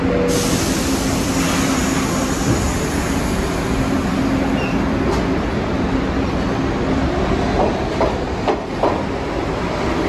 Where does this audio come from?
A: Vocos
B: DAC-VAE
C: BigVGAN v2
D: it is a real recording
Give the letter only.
D